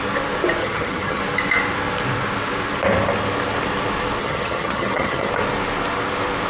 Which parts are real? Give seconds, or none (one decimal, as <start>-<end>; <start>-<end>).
0.0-0.6; 1.2-4.2; 5.3-6.5